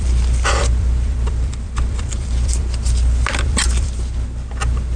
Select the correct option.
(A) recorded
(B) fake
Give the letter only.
B